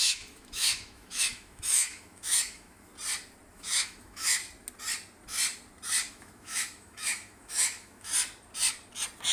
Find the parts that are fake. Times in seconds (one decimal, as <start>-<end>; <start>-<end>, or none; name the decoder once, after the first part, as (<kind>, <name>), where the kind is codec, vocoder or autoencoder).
0.0-2.9 (autoencoder, DAC-VAE); 3.5-4.4; 6.1-8.1